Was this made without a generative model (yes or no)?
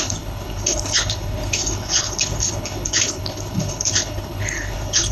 no